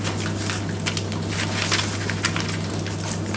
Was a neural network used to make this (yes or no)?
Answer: no